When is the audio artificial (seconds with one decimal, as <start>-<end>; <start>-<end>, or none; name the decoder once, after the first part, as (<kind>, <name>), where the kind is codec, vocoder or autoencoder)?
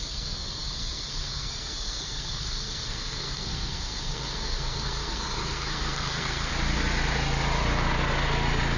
0.0-6.5 (codec, SNAC)